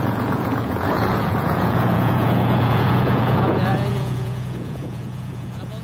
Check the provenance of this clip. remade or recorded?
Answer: remade